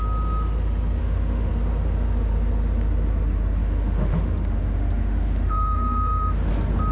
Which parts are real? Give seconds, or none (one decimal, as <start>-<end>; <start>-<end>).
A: 0.0-1.0; 1.5-3.6; 6.5-6.9